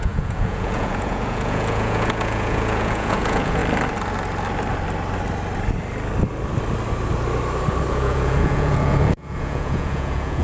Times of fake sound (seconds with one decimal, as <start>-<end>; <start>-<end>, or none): 0.0-3.6; 7.9-10.4